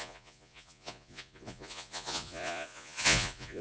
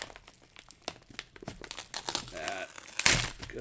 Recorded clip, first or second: second